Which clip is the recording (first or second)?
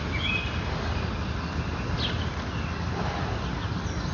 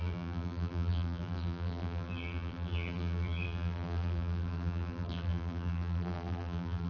first